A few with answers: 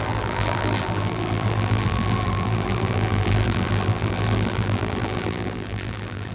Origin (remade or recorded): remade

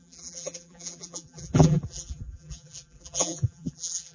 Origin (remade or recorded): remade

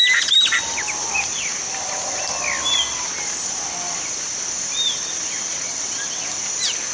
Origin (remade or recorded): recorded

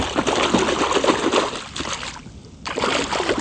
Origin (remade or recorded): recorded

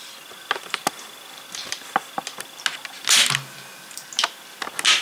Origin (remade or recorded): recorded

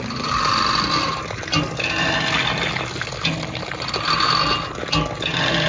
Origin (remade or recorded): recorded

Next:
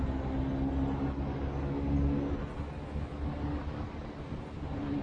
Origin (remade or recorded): recorded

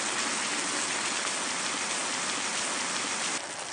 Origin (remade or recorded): recorded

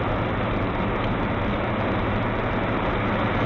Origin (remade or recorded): recorded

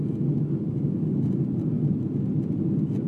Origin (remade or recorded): recorded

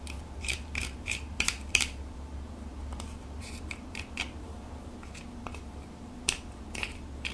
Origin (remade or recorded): remade